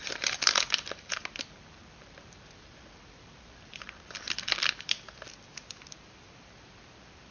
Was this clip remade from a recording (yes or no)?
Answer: yes